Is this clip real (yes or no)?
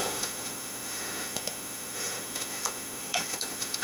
no